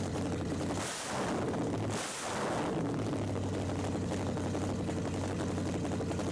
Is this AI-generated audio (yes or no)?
no